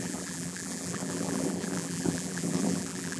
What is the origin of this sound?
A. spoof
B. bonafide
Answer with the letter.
A